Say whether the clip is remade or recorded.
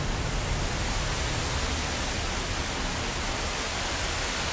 recorded